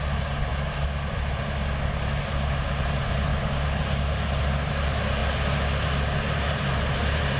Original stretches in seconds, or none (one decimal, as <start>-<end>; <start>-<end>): 0.5-2.8; 3.3-4.7; 5.2-6.3